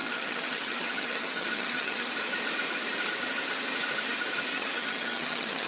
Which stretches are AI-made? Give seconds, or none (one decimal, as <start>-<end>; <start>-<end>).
0.0-2.1; 4.5-5.7